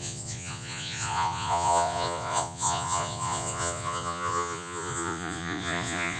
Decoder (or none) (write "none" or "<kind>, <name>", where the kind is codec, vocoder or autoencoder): vocoder, Vocos